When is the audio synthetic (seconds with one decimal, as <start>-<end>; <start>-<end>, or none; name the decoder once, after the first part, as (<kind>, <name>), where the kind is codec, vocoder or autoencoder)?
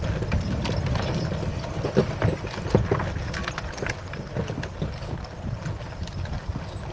none